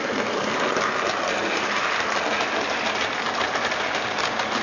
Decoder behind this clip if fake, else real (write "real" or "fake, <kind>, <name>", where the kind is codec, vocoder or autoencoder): real